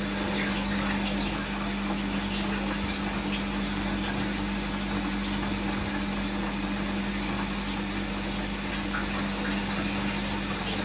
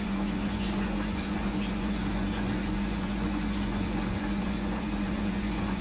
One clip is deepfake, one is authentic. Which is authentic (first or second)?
first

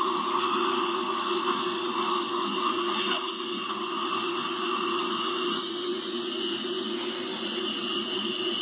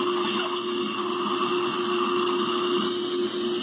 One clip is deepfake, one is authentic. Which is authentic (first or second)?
second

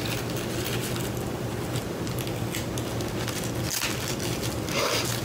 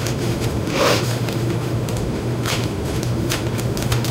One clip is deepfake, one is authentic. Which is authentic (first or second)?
first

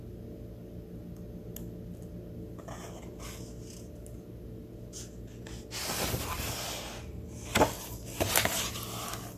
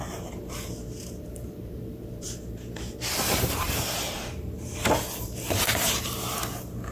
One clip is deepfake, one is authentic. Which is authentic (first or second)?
first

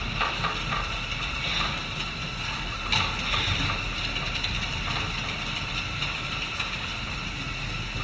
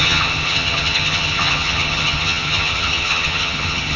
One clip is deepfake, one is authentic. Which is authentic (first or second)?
first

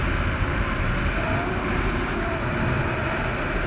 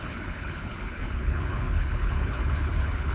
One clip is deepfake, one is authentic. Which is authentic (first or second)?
first